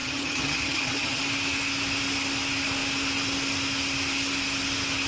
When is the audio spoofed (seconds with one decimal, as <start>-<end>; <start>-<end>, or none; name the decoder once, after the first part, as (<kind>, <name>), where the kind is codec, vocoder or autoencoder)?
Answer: 0.0-1.2 (vocoder, HiFi-GAN)